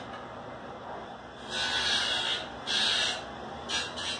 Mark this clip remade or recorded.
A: recorded